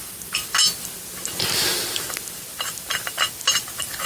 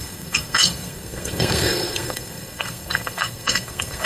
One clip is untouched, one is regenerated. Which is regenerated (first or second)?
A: second